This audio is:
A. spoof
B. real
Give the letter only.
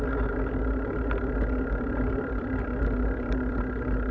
B